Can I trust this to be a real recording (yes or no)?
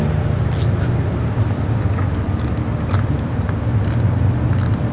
yes